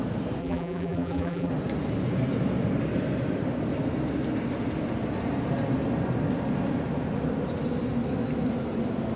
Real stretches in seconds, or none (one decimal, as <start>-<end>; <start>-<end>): 0.0-0.4; 1.5-9.2